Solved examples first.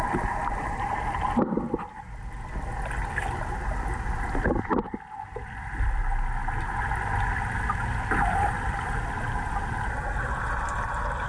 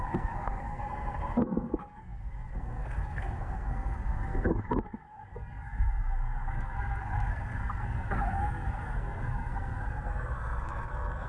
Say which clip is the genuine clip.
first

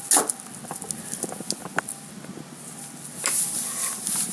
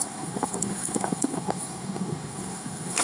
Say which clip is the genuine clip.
first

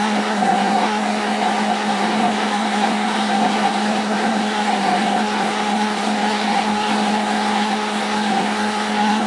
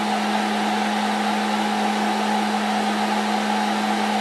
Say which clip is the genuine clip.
second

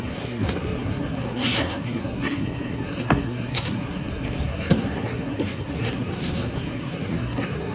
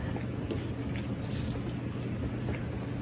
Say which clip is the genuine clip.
second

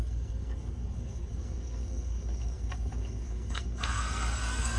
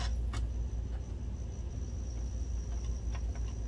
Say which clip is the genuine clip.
second